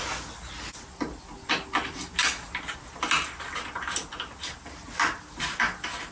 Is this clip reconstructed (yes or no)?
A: no